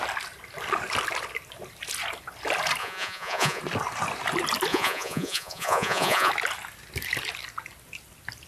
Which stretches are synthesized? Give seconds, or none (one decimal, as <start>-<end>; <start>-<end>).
2.8-3.6; 4.7-6.3